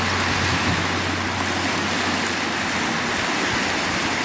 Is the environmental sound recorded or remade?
recorded